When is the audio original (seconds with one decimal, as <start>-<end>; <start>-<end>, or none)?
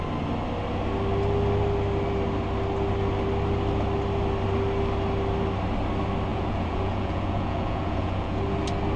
0.0-6.3; 8.4-9.0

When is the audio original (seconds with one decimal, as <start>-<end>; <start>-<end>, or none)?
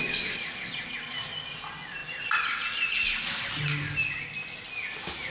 0.0-5.3